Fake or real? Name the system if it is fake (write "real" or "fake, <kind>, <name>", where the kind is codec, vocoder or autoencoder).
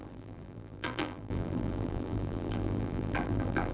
fake, vocoder, BigVGAN v2